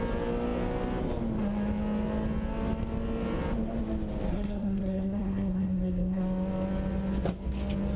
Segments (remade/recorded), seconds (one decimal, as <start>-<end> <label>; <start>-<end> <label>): 0.0-4.3 recorded; 4.3-6.2 remade; 6.2-8.0 recorded